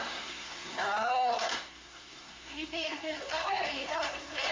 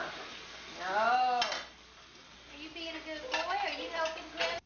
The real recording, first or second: second